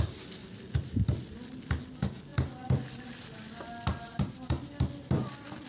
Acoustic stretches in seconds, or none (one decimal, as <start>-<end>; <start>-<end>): 0.0-2.3